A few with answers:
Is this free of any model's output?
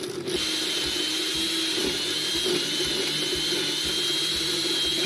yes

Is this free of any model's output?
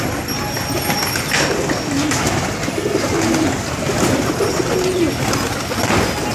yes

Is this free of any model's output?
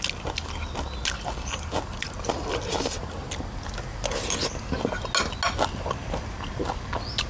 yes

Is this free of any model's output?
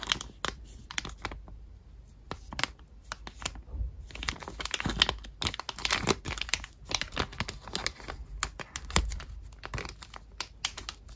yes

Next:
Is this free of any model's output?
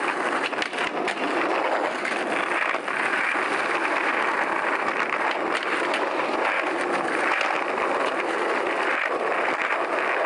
yes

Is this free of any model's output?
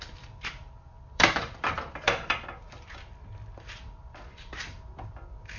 no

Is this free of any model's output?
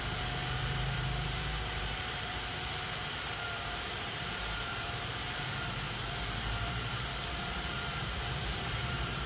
no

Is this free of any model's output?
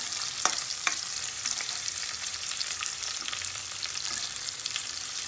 no